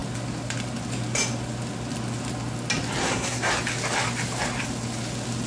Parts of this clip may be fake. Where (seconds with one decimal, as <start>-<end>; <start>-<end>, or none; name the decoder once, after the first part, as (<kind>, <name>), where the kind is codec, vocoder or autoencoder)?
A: 3.0-3.5 (codec, SNAC)

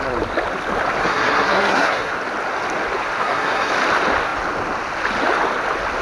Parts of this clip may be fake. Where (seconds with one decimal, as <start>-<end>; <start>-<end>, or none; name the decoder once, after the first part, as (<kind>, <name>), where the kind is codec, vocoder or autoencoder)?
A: 1.0-2.1 (codec, SNAC); 3.2-3.7

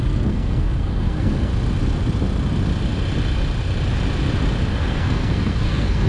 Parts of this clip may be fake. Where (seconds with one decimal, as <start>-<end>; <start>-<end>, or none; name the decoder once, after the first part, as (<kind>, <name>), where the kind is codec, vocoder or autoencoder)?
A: 0.0-1.5 (codec, SNAC); 4.7-6.1

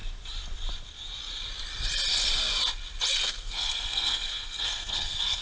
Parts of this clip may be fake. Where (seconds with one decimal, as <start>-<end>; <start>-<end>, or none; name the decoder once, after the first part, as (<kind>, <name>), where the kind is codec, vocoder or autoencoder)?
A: 3.1-5.4 (codec, SNAC)

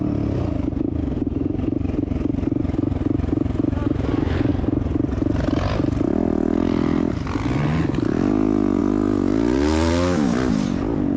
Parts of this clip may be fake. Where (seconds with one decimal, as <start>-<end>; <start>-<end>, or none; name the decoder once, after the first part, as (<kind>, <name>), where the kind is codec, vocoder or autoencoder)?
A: none

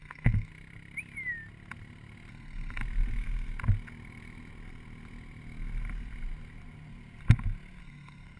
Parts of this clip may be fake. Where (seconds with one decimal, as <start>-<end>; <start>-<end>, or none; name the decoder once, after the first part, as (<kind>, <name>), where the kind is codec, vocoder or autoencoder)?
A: 0.0-0.5 (codec, SNAC); 2.3-2.8; 7.8-8.4

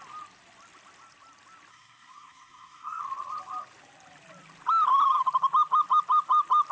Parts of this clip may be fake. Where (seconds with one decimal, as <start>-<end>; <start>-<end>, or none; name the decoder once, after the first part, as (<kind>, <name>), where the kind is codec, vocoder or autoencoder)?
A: 1.7-3.0 (codec, SNAC)